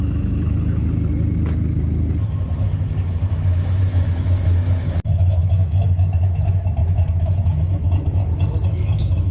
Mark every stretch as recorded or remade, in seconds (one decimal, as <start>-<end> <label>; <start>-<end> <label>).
0.0-0.8 remade; 0.8-3.2 recorded; 3.2-9.3 remade

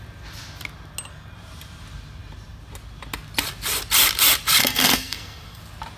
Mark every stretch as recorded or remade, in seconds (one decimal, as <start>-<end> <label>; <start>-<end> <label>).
0.0-4.6 recorded; 4.6-5.6 remade; 5.6-6.0 recorded

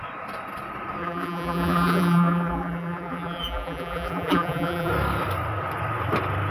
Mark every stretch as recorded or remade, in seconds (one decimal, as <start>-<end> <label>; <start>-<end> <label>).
0.0-1.0 recorded; 1.0-4.9 remade; 4.9-6.5 recorded